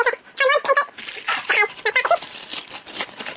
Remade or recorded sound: recorded